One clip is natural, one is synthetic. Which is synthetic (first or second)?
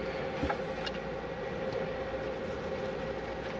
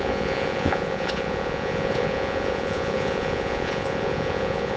second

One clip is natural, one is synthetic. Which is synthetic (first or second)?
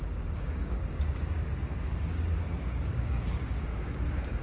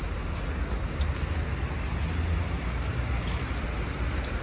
first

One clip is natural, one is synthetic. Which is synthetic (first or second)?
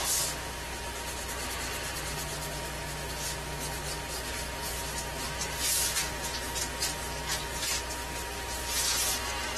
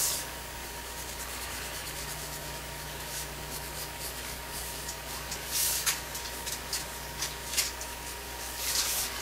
second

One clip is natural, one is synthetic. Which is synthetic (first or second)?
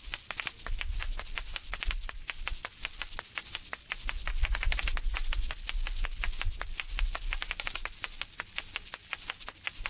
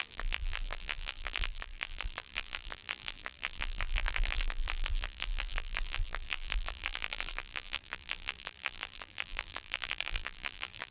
second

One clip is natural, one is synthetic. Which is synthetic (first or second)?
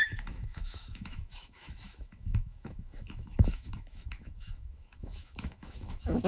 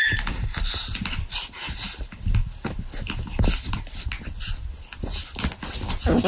first